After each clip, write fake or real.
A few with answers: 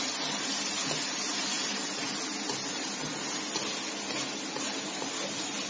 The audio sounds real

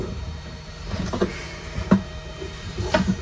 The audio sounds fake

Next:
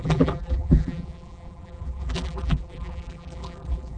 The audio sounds fake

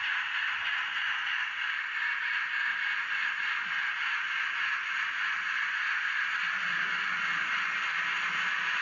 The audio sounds real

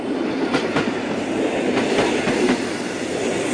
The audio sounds fake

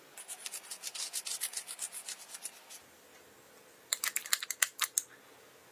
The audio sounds real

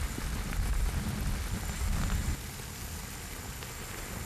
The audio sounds real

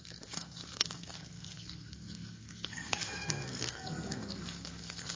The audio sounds fake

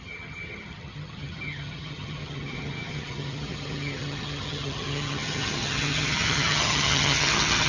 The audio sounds fake